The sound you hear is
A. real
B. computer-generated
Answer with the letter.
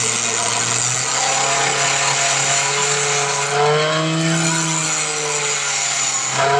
A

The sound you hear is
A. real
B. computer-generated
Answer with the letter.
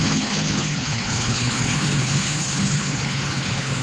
B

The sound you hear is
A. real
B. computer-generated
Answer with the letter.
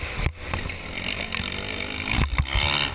A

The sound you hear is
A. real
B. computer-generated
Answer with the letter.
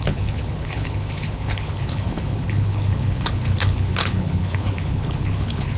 B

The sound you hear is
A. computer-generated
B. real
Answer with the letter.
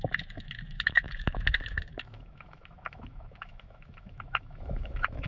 A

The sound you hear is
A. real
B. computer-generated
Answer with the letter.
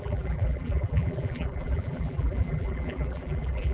B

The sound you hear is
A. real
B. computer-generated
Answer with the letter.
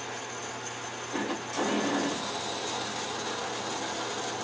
A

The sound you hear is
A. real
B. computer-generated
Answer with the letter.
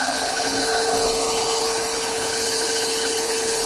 B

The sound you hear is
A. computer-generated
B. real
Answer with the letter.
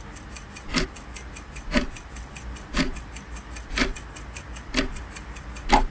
B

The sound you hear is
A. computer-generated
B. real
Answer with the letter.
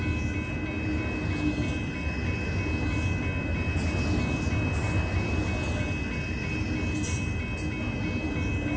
B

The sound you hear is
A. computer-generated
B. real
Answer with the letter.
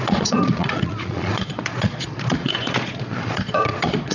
A